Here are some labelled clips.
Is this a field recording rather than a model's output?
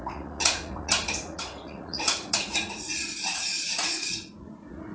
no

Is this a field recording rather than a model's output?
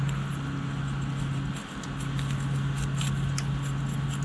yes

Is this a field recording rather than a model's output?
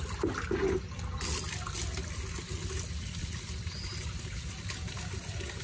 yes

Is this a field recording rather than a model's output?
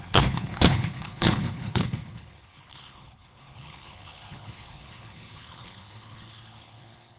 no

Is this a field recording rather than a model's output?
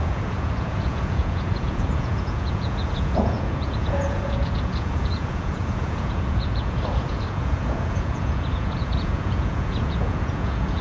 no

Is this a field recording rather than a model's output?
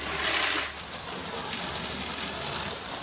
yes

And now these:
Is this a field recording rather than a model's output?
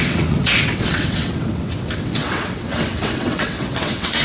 no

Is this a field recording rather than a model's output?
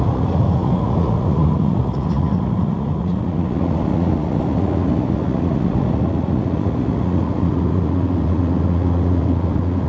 no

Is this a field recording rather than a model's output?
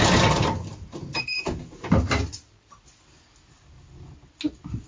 yes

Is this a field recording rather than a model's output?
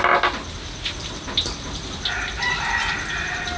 yes